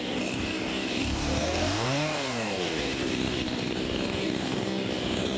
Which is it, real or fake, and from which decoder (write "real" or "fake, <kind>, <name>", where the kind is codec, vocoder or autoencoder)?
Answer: fake, codec, DAC